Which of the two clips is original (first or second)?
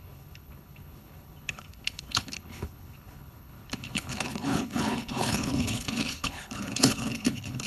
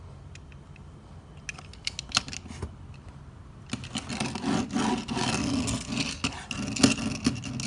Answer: second